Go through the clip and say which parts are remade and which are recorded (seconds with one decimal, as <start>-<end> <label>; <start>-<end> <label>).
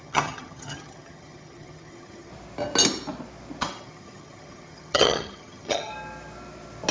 0.0-2.3 remade; 2.3-3.6 recorded; 3.6-5.9 remade; 5.9-6.9 recorded